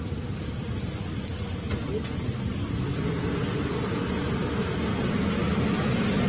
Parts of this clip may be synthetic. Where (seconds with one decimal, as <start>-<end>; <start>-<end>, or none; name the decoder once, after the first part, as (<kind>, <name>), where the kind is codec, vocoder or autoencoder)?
none